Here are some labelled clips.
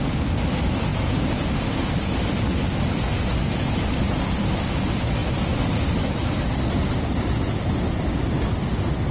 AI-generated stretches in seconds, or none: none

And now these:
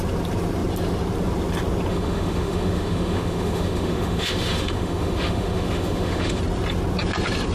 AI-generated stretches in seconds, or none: 1.9-6.4 (autoencoder, DAC-VAE)